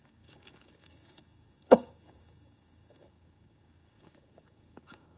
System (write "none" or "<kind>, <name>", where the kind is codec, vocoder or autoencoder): codec, DAC